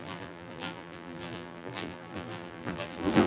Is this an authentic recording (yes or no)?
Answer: no